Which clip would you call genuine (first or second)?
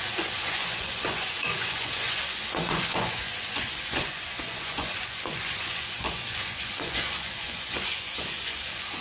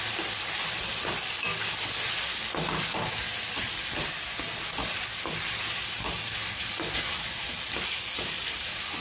second